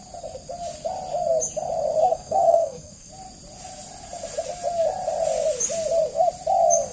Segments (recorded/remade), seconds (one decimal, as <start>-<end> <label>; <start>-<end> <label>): 0.0-2.1 recorded; 2.1-3.1 remade; 3.1-6.9 recorded